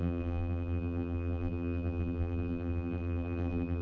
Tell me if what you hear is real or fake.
fake